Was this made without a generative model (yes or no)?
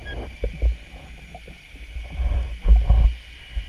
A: yes